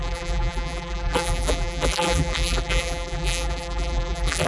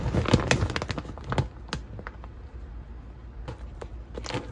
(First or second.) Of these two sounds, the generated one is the first